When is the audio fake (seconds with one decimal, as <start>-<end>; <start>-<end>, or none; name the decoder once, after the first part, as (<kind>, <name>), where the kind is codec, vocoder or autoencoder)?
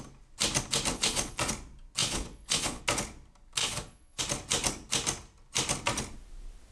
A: 0.9-1.5 (vocoder, Vocos); 2.0-2.8; 3.6-4.2